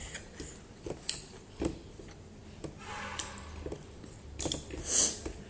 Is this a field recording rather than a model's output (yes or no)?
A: yes